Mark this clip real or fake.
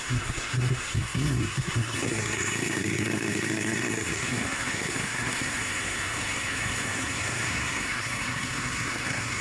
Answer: fake